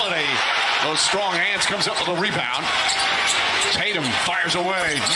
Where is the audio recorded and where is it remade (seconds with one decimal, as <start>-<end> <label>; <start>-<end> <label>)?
0.0-2.1 remade; 2.1-2.9 recorded; 2.9-5.2 remade